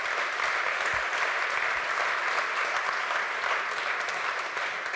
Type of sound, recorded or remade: recorded